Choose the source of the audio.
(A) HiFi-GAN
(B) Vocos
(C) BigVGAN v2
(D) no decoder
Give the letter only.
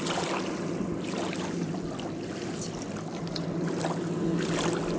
D